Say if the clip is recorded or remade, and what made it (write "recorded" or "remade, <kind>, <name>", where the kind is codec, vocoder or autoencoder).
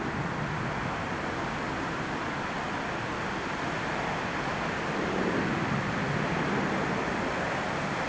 recorded